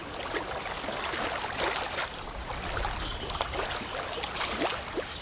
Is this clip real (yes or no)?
yes